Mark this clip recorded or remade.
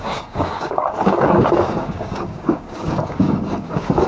remade